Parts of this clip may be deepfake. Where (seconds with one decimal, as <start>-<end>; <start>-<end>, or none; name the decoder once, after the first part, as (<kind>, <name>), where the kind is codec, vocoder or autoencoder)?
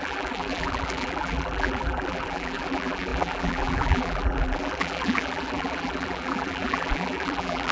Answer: 0.0-7.7 (vocoder, BigVGAN v2)